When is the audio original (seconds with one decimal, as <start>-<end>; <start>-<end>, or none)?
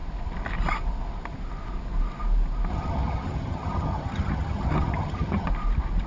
0.0-2.7; 5.5-6.1